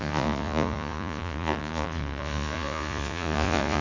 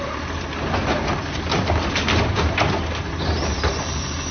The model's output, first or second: first